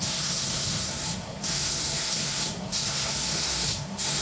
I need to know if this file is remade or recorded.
remade